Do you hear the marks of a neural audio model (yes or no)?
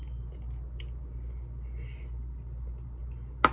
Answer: no